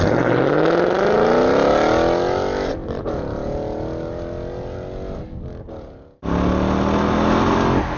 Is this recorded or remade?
recorded